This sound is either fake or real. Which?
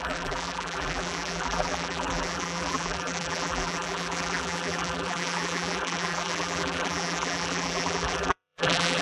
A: fake